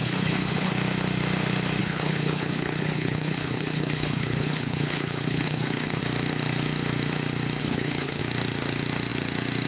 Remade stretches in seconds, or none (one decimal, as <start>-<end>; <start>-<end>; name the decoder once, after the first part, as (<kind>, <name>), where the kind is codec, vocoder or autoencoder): 0.0-0.7 (codec, HILCodec); 1.8-6.0; 7.6-8.2